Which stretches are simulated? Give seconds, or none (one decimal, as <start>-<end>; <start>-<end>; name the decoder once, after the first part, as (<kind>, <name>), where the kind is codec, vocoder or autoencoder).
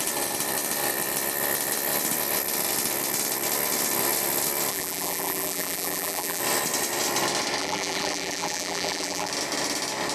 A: 4.7-6.4 (vocoder, BigVGAN v2); 7.6-9.3